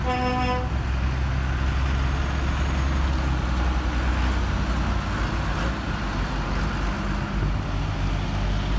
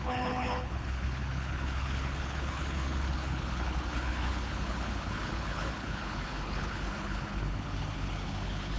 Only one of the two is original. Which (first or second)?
first